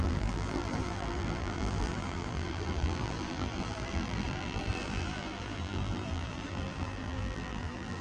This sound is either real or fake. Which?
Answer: fake